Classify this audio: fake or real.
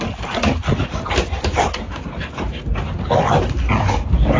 real